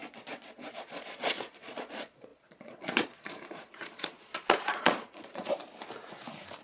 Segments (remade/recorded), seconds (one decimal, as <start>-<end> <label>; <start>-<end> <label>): 0.0-5.5 remade; 5.5-6.6 recorded